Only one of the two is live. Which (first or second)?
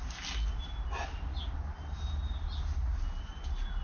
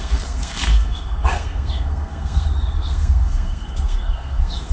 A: first